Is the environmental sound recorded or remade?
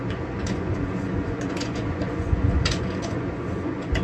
remade